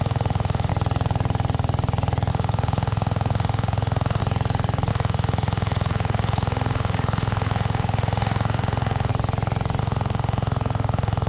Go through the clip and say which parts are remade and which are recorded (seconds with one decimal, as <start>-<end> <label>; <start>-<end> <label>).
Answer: 0.0-0.7 remade; 0.7-2.3 recorded; 2.3-4.2 remade; 4.2-4.9 recorded; 4.9-9.1 remade; 9.1-9.8 recorded; 9.8-11.3 remade